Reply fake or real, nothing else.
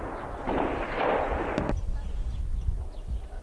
real